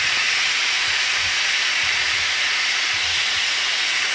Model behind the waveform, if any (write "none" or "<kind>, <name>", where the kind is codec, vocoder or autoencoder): vocoder, Vocos